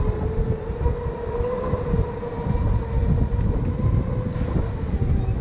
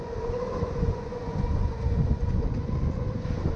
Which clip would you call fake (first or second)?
second